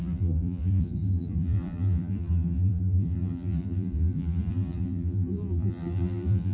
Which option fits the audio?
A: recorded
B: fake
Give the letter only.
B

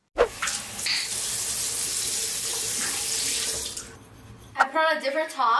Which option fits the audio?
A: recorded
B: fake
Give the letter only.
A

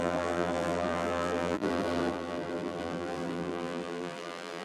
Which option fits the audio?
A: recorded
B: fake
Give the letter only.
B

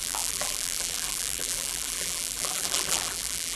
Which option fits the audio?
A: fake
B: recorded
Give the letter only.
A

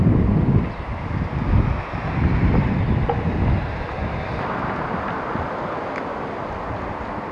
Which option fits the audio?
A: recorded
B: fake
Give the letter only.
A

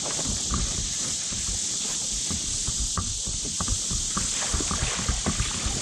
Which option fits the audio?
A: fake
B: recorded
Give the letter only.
B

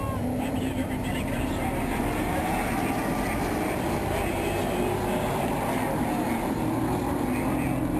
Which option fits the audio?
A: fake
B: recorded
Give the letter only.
A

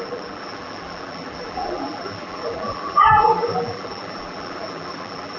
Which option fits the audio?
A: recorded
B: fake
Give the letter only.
B